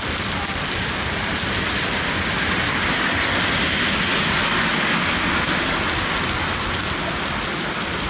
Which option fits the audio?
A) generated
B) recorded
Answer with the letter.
B